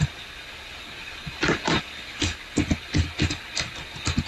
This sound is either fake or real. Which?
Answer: real